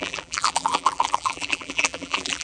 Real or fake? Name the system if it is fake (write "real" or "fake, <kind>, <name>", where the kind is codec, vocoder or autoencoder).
fake, vocoder, BigVGAN v2